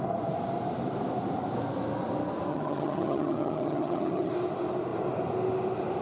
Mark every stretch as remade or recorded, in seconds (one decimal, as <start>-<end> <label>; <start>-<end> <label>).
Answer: 0.0-2.5 recorded; 2.5-4.3 remade; 4.3-6.0 recorded